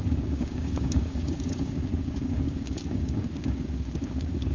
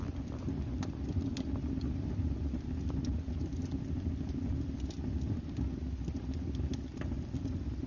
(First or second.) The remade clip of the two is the first